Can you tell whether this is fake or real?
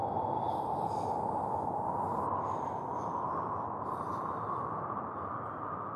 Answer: real